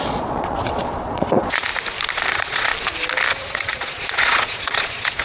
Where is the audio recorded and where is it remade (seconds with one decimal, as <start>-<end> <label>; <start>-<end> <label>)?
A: 0.0-1.7 remade; 1.7-2.3 recorded; 2.3-2.7 remade; 2.7-3.3 recorded; 3.3-5.2 remade